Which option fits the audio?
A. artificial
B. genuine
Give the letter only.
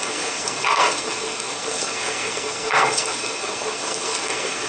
A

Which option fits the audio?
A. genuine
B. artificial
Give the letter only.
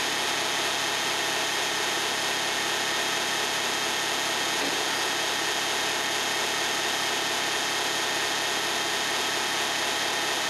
A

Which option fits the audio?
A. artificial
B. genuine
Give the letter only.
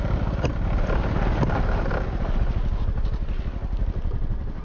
B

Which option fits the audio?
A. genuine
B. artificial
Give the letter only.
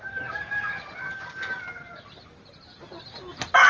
A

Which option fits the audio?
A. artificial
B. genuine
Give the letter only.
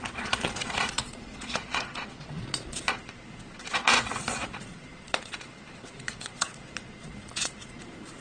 A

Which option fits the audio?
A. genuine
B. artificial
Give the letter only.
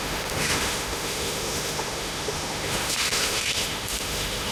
B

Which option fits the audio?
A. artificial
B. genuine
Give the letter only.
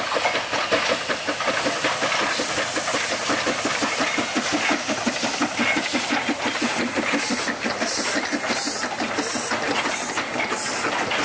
B